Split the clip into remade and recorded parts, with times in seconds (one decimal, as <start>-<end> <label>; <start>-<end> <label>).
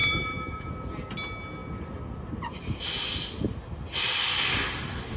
0.0-0.7 remade; 0.7-5.2 recorded